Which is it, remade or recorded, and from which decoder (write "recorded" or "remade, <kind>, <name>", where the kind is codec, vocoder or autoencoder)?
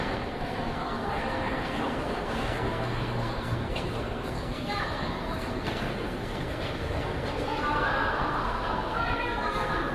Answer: remade, codec, SNAC